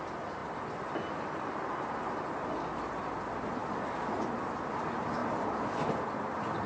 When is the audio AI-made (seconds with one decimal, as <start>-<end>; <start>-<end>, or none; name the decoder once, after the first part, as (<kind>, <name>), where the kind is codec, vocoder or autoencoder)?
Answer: 0.0-0.4 (vocoder, BigVGAN v2); 2.9-6.7